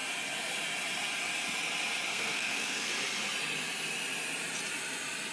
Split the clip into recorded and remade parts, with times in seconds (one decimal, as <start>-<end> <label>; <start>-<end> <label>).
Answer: 0.0-2.1 recorded; 2.1-2.9 remade; 2.9-5.3 recorded